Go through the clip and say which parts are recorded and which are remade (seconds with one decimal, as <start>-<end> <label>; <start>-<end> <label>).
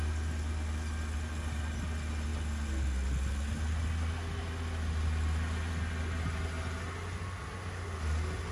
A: 0.0-8.5 recorded